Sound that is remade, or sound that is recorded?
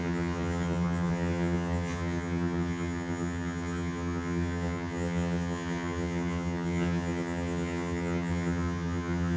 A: remade